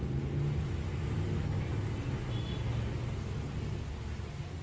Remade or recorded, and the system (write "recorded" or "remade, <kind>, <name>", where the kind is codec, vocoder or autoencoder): recorded